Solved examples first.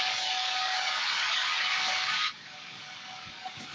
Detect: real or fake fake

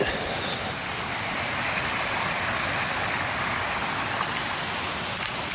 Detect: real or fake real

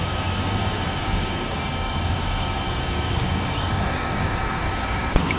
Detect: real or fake fake